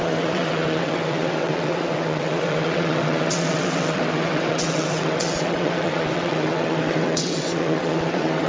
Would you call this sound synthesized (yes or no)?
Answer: yes